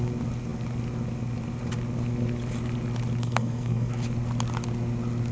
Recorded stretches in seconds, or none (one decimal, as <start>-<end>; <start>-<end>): 0.0-3.2; 3.9-5.3